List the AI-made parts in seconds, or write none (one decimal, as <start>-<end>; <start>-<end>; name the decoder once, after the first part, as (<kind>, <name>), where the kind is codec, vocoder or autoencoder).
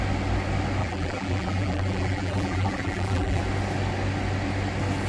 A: 0.8-3.4 (vocoder, BigVGAN v2)